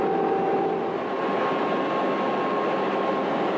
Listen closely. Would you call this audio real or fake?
real